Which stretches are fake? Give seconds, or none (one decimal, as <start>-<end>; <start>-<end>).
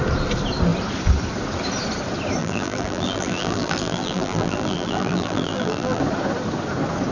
2.4-6.0